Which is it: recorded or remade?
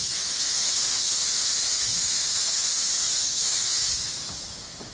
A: remade